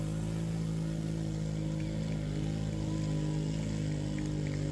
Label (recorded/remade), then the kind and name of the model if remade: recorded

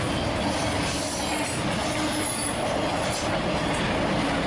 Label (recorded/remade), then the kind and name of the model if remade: recorded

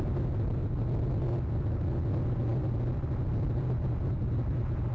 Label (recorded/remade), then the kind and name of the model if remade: recorded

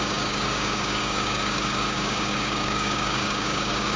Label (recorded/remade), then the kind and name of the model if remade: remade, codec, DAC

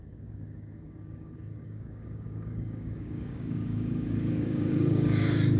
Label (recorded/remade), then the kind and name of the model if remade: remade, codec, DAC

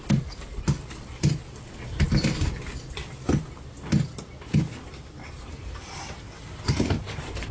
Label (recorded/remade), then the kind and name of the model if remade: recorded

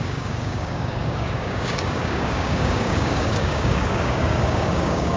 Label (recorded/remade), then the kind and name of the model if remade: remade, codec, DAC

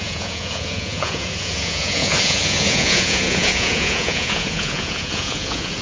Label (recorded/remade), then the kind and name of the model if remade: remade, vocoder, Vocos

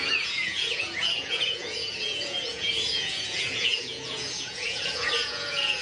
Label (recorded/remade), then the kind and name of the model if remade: remade, vocoder, Vocos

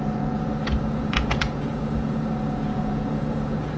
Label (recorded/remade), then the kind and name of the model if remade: remade, vocoder, Vocos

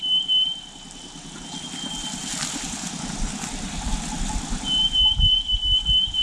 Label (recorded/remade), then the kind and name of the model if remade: recorded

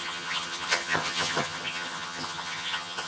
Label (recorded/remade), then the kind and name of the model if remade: remade, vocoder, HiFi-GAN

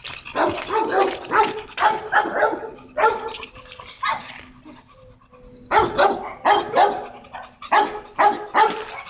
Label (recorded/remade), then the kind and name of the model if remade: recorded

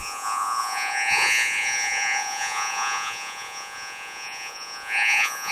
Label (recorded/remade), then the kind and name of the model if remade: remade, vocoder, Vocos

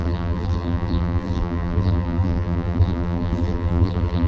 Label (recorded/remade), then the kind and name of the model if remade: remade, vocoder, BigVGAN v2